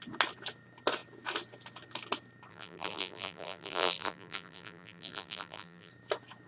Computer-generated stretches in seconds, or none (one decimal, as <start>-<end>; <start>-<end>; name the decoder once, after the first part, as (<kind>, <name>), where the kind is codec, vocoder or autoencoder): 2.5-5.9 (vocoder, BigVGAN v2)